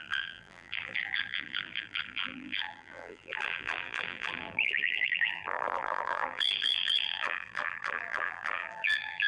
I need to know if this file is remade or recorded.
remade